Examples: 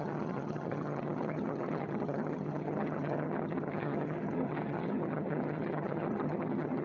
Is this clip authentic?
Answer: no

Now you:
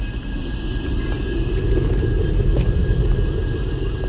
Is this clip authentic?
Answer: yes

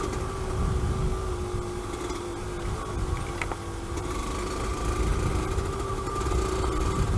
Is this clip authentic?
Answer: yes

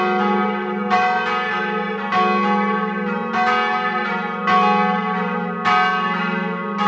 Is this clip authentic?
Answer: yes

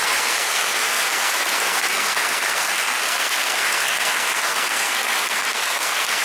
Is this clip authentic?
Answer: no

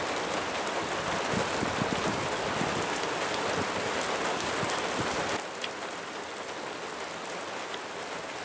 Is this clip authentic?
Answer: yes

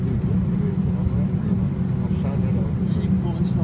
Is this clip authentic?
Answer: yes